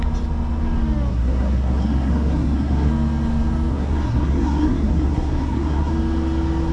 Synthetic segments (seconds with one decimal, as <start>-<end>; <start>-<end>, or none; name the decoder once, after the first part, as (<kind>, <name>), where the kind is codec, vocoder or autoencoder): 1.1-2.9 (codec, SNAC); 3.7-5.9